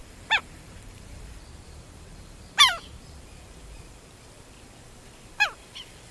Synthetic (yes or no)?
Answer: yes